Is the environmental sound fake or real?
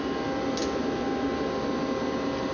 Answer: real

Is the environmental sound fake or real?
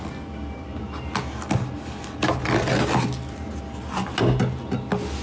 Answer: real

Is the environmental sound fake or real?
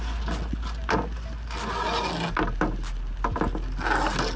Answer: real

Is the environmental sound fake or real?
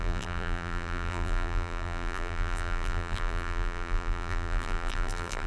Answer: fake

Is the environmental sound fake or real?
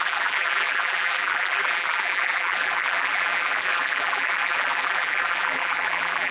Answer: fake